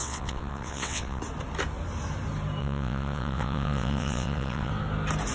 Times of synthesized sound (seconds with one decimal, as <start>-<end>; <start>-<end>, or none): 0.0-1.2; 2.6-4.7